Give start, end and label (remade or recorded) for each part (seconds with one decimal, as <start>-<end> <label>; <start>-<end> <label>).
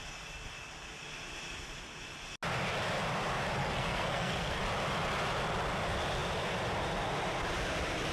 0.0-3.6 recorded; 3.6-4.6 remade; 4.6-8.1 recorded